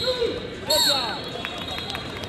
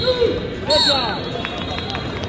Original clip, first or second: second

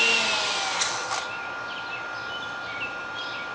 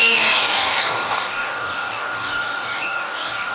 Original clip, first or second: first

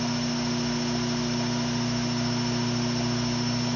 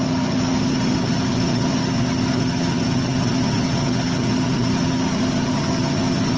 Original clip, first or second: first